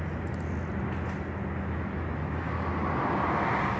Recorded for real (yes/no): yes